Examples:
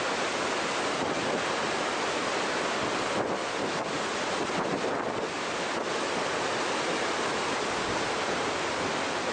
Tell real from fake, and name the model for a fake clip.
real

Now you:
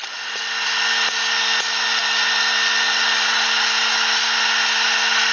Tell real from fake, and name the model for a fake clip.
real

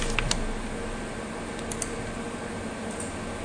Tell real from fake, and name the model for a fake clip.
real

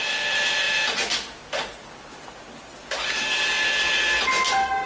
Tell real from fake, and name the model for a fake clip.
real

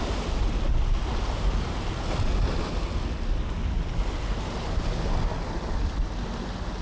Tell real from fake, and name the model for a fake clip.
real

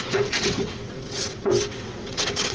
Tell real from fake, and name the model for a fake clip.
fake, vocoder, WaveNeXt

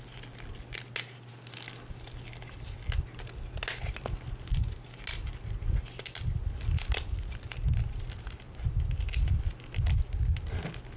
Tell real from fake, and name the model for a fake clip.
real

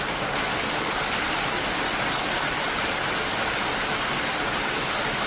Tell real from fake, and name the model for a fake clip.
real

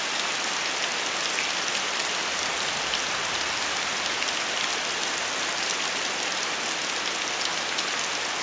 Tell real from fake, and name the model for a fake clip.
real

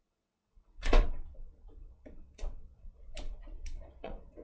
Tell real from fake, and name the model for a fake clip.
fake, vocoder, WaveNeXt